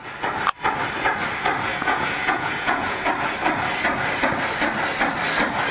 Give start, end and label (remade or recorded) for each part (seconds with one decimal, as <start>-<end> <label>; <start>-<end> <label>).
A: 0.0-1.7 recorded; 1.7-3.0 remade; 3.0-5.7 recorded